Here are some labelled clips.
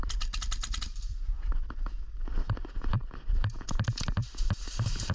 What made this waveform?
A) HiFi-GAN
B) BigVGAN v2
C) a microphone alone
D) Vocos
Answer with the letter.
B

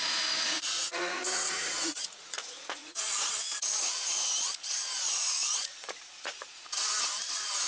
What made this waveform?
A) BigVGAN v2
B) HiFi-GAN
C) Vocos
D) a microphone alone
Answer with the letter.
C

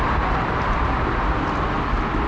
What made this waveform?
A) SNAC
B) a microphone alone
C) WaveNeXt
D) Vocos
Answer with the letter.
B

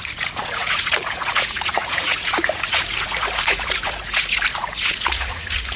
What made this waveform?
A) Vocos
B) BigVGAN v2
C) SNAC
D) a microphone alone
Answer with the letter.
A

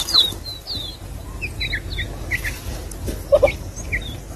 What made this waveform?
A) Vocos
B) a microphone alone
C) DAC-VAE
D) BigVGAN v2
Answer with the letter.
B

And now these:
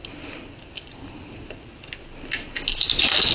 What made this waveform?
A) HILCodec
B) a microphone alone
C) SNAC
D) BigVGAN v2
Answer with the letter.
B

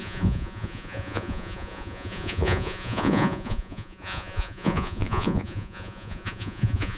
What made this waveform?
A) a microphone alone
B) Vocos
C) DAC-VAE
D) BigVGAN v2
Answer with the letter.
B